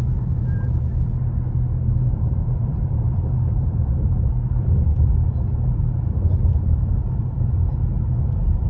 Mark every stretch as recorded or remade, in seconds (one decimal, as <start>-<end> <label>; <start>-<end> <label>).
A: 0.0-0.9 remade; 0.9-2.1 recorded; 2.1-8.7 remade